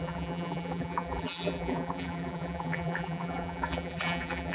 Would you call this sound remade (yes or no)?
yes